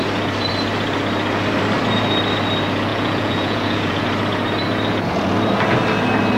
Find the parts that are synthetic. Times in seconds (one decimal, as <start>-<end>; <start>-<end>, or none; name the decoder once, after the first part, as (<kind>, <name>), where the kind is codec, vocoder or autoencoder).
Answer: 2.9-4.0 (vocoder, Vocos)